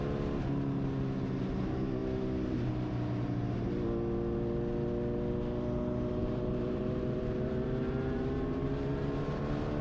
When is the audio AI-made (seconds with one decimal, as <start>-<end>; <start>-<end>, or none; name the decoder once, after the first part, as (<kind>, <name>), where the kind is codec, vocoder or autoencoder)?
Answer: 6.2-9.4 (vocoder, BigVGAN v2)